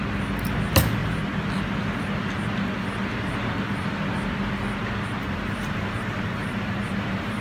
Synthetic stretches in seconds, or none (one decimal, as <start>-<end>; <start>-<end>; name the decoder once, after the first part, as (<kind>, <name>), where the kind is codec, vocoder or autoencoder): 5.2-7.4 (vocoder, BigVGAN v2)